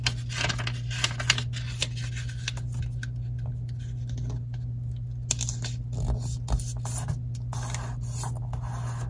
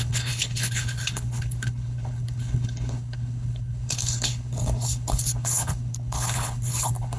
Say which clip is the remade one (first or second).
second